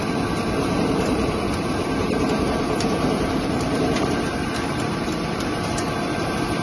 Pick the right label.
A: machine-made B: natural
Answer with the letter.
A